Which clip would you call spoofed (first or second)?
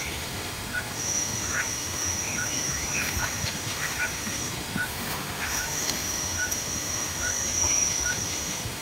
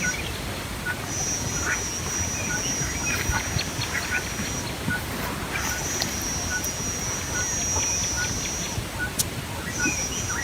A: first